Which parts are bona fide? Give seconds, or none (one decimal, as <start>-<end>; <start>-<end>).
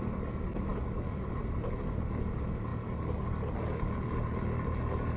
0.0-5.2